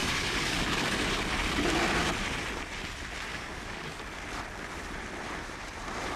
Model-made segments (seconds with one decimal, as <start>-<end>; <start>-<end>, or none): 0.0-1.2; 3.3-4.0